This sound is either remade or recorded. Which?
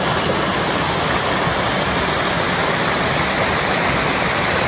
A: recorded